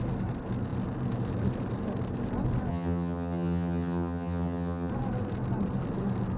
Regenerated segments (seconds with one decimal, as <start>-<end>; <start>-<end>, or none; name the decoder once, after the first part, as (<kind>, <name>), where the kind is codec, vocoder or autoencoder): 2.7-4.9 (vocoder, HiFi-GAN)